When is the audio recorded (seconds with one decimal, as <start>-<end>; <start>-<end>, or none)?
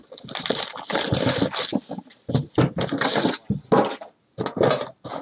0.0-5.2